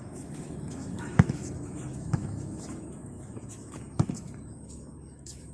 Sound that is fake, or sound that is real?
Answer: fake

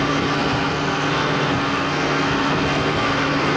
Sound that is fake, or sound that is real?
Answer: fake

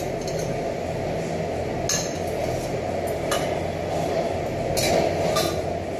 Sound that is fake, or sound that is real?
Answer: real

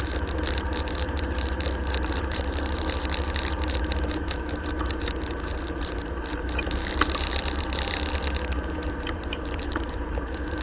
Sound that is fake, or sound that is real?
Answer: fake